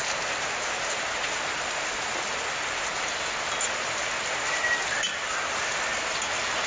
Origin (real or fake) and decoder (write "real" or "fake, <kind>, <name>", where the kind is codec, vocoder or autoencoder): real